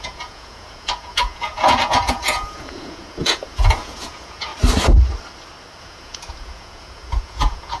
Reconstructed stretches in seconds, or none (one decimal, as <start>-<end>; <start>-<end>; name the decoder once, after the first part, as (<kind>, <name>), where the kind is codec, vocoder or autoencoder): 0.0-4.5 (vocoder, Vocos); 5.8-7.8